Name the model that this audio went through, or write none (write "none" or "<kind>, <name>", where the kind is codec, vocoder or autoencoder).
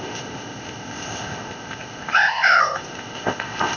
codec, ZipCodec